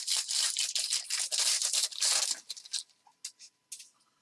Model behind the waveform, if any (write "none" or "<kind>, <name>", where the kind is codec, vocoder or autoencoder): none